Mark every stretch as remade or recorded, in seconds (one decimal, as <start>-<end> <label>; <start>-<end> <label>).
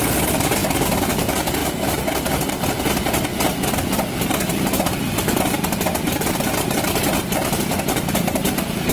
0.0-8.9 recorded